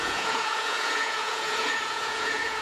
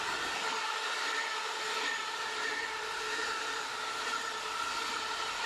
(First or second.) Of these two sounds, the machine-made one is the first